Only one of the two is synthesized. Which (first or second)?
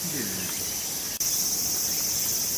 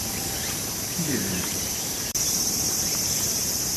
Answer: second